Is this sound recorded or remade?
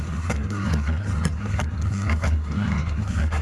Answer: remade